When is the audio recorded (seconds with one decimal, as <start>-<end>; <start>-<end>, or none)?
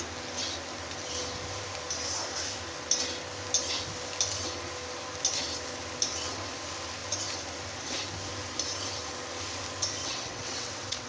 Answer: 0.0-10.0